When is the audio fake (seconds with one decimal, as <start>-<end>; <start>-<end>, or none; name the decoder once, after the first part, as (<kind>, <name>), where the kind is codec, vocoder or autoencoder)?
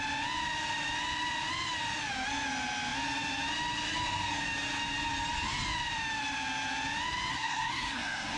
7.3-8.4 (codec, SNAC)